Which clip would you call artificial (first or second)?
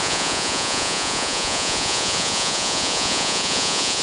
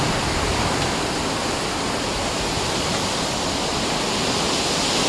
first